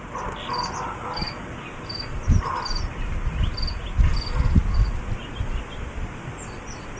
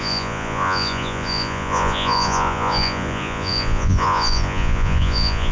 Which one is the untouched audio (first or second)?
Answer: first